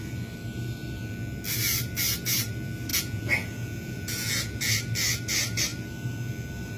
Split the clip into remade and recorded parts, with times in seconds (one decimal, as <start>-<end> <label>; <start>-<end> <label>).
0.0-2.9 recorded; 2.9-4.7 remade; 4.7-6.8 recorded